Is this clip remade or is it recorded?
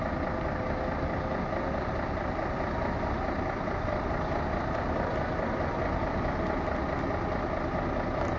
recorded